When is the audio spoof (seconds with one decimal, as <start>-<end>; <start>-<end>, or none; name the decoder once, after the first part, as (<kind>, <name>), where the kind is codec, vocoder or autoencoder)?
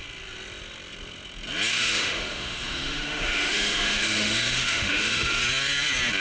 1.7-5.4 (autoencoder, DAC-VAE)